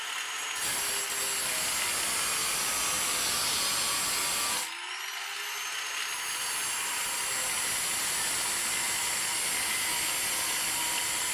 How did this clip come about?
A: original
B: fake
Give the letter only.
A